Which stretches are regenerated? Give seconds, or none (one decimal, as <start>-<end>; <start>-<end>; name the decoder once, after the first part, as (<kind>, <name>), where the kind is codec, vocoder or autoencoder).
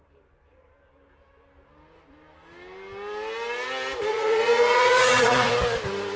4.1-5.5 (vocoder, Vocos)